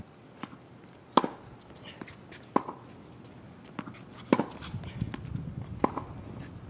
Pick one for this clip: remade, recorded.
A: recorded